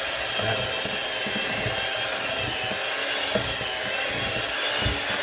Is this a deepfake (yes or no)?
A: no